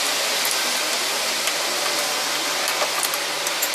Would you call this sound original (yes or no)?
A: yes